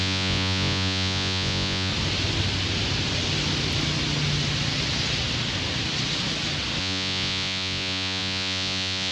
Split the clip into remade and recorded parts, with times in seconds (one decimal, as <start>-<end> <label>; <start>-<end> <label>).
0.0-1.9 remade; 1.9-6.8 recorded; 6.8-9.1 remade